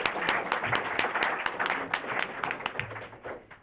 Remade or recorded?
recorded